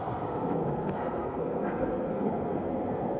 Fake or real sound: fake